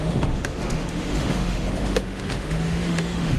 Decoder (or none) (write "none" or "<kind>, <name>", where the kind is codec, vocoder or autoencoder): autoencoder, DAC-VAE